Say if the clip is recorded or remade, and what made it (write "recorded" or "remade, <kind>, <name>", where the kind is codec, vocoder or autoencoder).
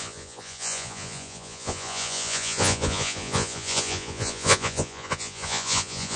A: remade, vocoder, Vocos